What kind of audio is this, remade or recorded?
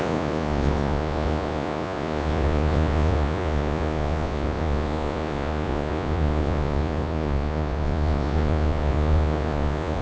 remade